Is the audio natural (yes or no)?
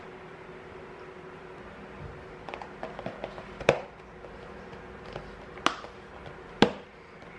yes